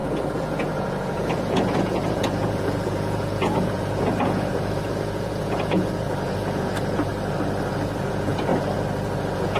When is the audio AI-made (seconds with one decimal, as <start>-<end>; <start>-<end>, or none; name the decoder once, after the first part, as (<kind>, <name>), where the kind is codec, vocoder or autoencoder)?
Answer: 0.0-7.1 (vocoder, Vocos); 8.0-8.5; 9.2-9.6